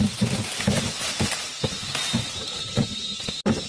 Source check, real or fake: real